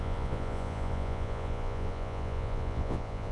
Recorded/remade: remade